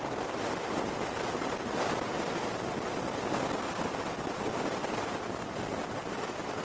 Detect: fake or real real